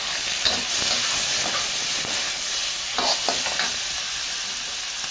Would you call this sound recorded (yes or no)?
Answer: yes